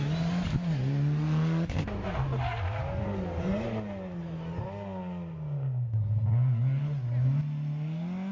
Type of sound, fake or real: real